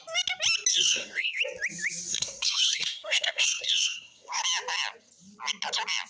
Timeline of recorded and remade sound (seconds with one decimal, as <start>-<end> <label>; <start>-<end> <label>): 0.0-0.7 recorded; 0.7-1.4 remade; 1.4-2.1 recorded; 2.1-4.4 remade; 4.4-6.1 recorded